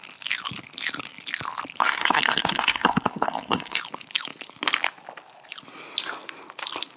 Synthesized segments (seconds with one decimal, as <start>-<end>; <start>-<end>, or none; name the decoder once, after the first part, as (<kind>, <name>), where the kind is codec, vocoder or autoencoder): 1.8-3.8 (codec, SNAC)

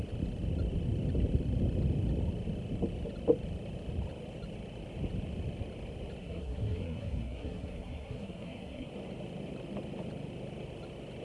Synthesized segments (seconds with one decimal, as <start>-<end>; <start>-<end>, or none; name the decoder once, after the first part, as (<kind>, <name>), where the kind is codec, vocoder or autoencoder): 6.2-8.9 (codec, SNAC)